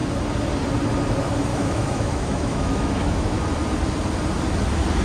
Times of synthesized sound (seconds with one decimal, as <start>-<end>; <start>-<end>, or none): 1.5-3.4